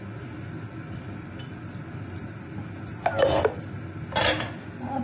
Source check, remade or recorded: recorded